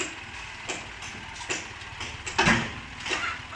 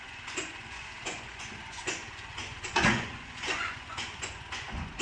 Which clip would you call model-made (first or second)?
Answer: second